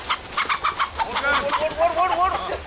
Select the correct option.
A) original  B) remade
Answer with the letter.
A